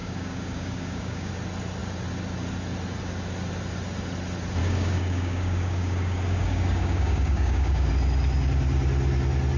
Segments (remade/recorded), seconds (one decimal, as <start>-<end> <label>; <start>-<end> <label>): 0.0-1.3 remade; 1.3-4.6 recorded; 4.6-7.9 remade; 7.9-9.6 recorded